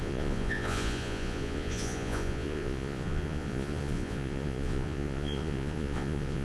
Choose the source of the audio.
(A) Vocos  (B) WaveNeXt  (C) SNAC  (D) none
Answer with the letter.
A